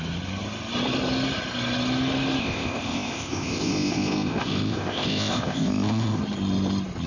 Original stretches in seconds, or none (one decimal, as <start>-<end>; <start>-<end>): 0.0-2.4; 6.2-7.1